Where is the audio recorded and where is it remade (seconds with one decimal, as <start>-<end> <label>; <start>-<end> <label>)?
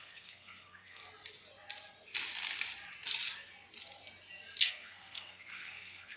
0.0-1.0 remade; 1.0-4.7 recorded; 4.7-6.2 remade